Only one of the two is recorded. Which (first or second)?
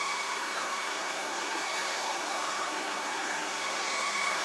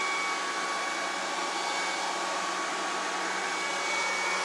second